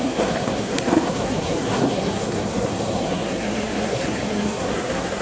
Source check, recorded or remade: remade